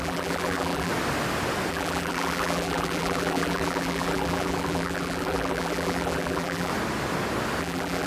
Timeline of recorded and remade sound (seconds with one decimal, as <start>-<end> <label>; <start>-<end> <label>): 0.0-0.9 remade; 0.9-1.7 recorded; 1.7-6.7 remade; 6.7-7.6 recorded; 7.6-8.1 remade